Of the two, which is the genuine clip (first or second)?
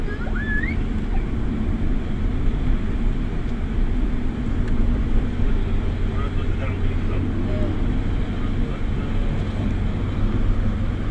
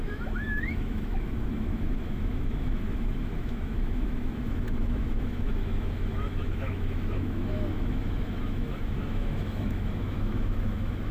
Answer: first